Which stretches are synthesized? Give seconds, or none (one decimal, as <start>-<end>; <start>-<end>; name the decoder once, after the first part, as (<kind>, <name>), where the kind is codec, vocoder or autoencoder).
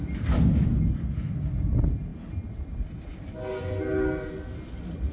none